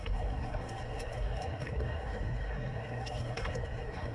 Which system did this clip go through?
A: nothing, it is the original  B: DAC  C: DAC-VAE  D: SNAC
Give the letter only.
D